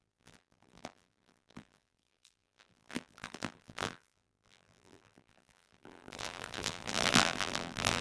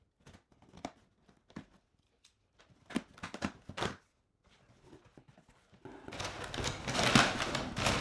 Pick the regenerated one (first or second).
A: first